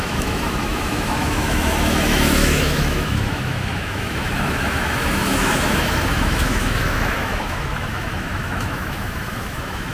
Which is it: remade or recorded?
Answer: remade